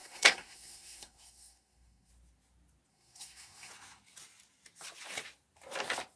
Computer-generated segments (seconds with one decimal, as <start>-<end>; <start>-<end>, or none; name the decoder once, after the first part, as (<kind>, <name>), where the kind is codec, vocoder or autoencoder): 0.0-2.1 (codec, SNAC); 2.9-3.7

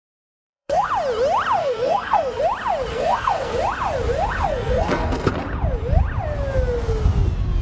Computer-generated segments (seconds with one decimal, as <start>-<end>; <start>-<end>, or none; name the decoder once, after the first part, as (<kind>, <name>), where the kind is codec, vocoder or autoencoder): 0.0-0.9 (codec, SNAC); 1.6-2.4; 2.9-3.6; 4.5-5.3

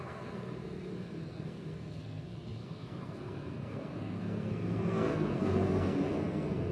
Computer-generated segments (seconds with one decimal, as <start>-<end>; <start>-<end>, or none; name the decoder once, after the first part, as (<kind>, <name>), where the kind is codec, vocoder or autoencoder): 0.0-6.7 (codec, SNAC)

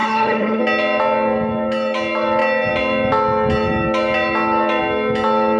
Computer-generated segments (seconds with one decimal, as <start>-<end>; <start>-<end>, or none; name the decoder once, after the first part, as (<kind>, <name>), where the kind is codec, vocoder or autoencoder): 0.0-0.6 (codec, SNAC)

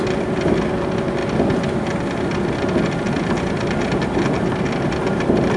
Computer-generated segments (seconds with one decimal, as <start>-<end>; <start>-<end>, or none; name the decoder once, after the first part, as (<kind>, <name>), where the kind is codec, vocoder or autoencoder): none

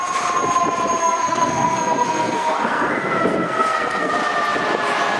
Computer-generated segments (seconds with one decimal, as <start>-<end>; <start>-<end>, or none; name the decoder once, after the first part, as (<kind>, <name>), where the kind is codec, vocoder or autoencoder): 1.0-4.1 (codec, SNAC)

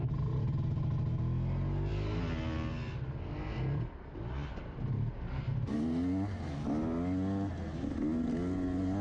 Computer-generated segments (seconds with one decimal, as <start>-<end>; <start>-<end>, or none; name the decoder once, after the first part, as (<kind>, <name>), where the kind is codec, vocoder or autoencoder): none